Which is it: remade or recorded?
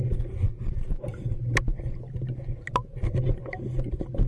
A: recorded